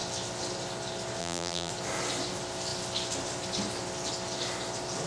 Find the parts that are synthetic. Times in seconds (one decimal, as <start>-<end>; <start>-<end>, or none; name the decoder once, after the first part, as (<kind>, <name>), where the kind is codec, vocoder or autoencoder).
1.2-1.7 (vocoder, BigVGAN v2)